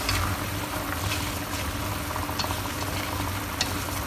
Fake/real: real